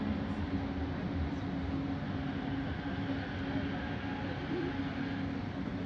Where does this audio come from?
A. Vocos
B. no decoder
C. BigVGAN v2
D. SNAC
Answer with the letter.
B